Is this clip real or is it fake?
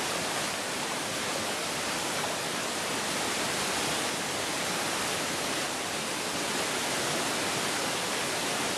real